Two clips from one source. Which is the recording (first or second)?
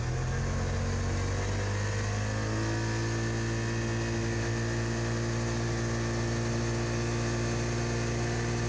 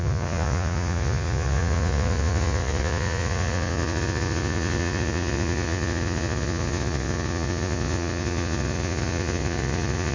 first